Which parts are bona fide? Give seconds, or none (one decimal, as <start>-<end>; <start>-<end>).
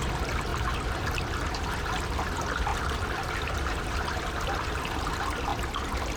0.0-2.7; 5.1-6.2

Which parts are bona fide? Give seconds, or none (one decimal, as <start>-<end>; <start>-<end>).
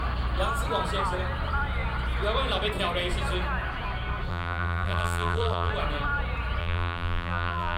0.0-4.3; 5.7-6.6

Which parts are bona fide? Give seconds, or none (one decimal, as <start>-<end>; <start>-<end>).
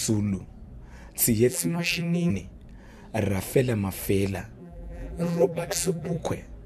0.0-1.5; 2.3-4.6; 6.2-6.7